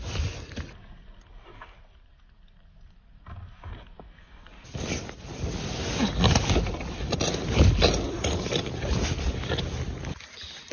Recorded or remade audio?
recorded